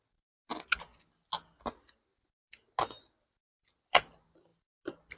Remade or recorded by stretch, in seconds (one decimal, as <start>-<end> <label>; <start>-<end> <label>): 0.0-5.2 recorded

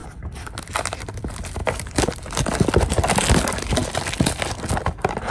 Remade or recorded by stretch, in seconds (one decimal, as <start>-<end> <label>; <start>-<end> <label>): 0.0-1.6 recorded; 1.6-2.3 remade; 2.3-5.3 recorded

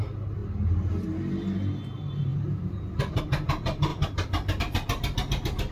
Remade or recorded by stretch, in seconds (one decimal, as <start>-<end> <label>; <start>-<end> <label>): 0.0-2.3 recorded; 2.3-3.2 remade; 3.2-3.9 recorded; 3.9-4.6 remade; 4.6-5.7 recorded

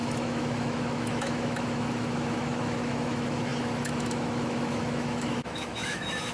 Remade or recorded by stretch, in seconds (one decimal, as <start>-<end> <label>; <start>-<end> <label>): 0.0-6.3 remade

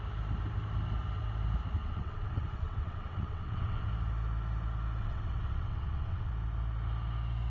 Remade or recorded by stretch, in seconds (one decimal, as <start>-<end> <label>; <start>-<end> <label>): 0.0-1.8 recorded; 1.8-3.9 remade; 3.9-5.0 recorded; 5.0-6.3 remade; 6.3-7.5 recorded